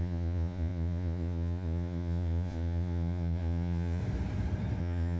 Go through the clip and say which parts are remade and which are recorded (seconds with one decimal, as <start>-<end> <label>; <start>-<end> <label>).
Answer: 0.0-4.0 remade; 4.0-4.8 recorded; 4.8-5.2 remade